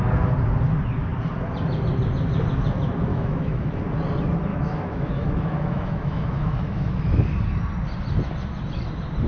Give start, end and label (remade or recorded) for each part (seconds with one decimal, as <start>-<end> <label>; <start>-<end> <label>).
0.0-3.1 recorded; 3.1-3.8 remade; 3.8-4.5 recorded; 4.5-7.0 remade; 7.0-9.3 recorded

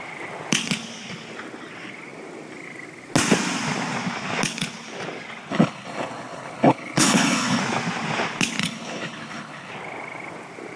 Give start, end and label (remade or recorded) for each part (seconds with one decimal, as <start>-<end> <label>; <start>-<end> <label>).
0.0-5.5 recorded; 5.5-7.6 remade; 7.6-8.6 recorded; 8.6-9.7 remade; 9.7-10.8 recorded

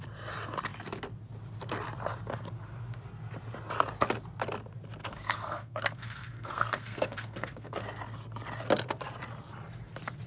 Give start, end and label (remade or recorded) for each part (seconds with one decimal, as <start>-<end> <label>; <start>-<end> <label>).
0.0-5.0 recorded; 5.0-7.8 remade; 7.8-10.3 recorded